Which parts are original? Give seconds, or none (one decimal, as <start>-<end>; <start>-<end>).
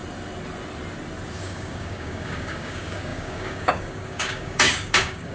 0.0-1.4